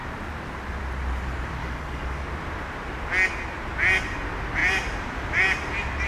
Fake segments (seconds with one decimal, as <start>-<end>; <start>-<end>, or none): 1.6-2.3